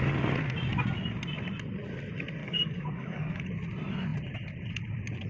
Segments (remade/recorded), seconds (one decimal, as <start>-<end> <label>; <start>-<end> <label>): 0.0-2.4 recorded; 2.4-3.4 remade; 3.4-5.3 recorded